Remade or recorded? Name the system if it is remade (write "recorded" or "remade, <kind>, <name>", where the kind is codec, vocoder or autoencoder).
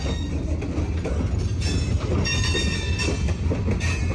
recorded